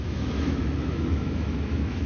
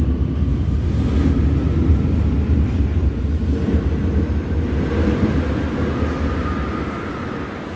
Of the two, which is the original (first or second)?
second